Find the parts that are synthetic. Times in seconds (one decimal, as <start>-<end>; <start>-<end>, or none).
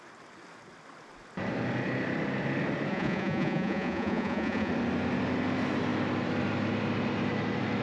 2.9-4.7